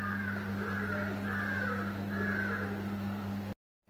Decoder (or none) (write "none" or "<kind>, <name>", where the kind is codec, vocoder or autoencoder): none